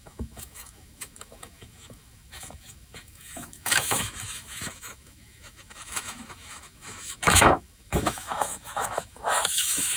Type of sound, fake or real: fake